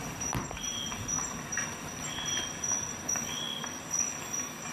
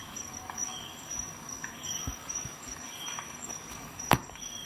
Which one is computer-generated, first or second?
second